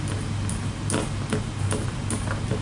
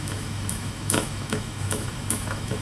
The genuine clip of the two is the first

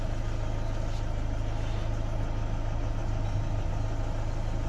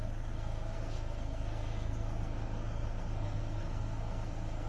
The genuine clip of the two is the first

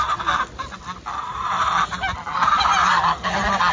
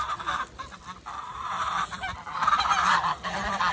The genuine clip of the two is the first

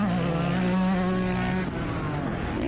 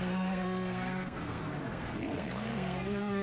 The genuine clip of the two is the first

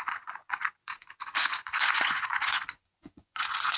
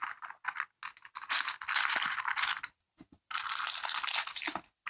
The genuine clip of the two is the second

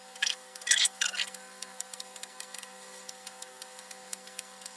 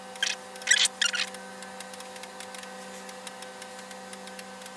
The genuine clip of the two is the second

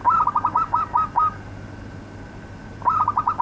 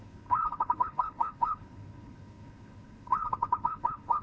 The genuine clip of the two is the first